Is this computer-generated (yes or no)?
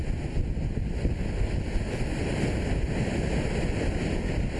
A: no